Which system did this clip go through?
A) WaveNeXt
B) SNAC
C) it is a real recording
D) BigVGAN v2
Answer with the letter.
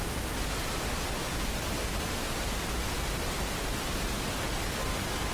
C